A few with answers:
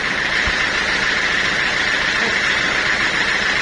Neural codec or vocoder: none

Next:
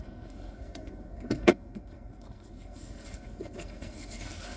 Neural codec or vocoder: codec, SNAC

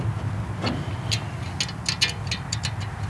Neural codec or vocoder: none